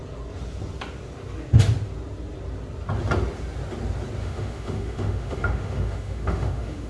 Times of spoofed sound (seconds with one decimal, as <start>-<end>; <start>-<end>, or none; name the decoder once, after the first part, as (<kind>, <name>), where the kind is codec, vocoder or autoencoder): 4.2-6.9 (autoencoder, DAC-VAE)